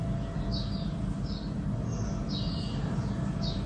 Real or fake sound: real